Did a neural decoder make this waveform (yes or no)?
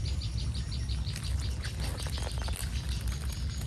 no